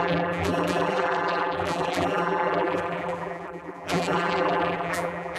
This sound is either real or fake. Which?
fake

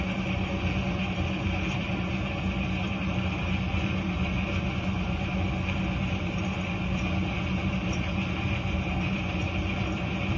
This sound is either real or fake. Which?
fake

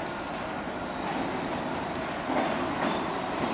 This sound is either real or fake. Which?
fake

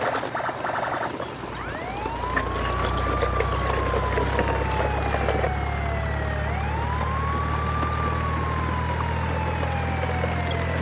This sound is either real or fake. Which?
real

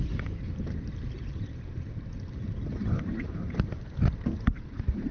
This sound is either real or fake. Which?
real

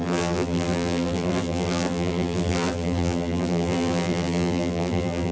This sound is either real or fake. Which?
fake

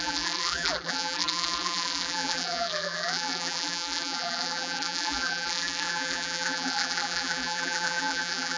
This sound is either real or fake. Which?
fake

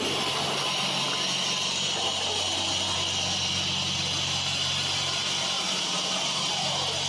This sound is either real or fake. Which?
real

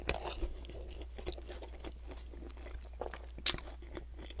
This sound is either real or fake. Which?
real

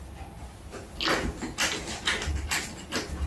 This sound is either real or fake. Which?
real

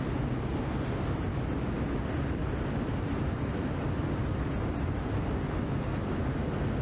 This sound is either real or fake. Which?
real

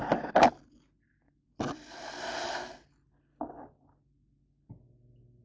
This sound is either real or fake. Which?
real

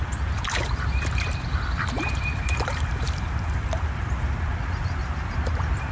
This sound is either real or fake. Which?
fake